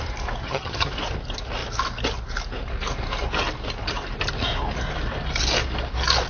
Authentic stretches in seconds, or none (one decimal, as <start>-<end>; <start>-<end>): 0.0-0.4; 0.9-6.3